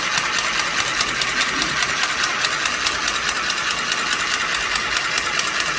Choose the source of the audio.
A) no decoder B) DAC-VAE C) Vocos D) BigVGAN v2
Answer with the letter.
A